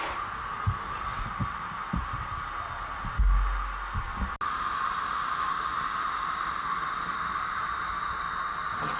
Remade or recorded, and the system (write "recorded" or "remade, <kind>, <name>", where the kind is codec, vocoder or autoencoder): recorded